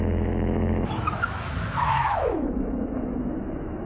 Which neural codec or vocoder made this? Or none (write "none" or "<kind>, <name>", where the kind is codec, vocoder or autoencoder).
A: autoencoder, DAC-VAE